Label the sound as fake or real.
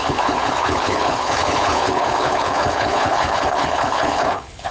fake